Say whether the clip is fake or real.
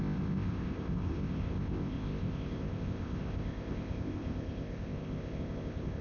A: fake